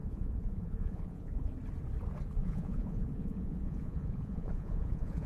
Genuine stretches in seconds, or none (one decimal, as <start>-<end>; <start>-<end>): 1.5-2.4